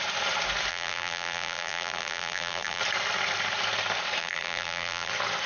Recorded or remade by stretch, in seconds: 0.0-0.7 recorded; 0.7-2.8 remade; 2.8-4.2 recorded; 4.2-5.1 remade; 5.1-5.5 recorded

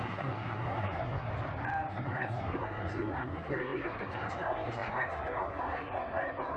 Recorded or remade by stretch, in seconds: 0.0-1.3 remade; 1.3-1.9 recorded; 1.9-6.6 remade

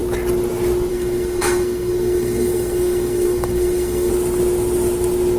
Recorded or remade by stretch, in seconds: 0.0-0.9 recorded; 0.9-4.1 remade; 4.1-5.4 recorded

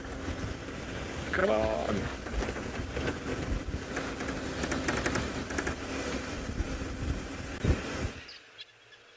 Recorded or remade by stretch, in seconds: 0.0-1.4 recorded; 1.4-2.5 remade; 2.5-9.2 recorded

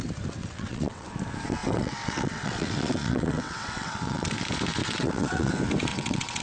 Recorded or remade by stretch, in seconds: 0.0-0.4 recorded; 0.4-1.1 remade; 1.1-1.6 recorded; 1.6-4.3 remade; 4.3-4.8 recorded; 4.8-5.5 remade; 5.5-5.9 recorded; 5.9-6.4 remade

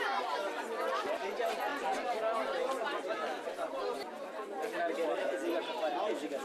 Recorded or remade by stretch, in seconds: 0.0-6.4 recorded